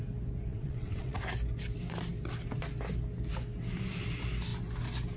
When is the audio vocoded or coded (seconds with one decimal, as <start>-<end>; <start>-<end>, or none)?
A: 0.5-1.2